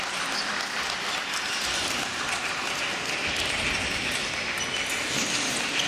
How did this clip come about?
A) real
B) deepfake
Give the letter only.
A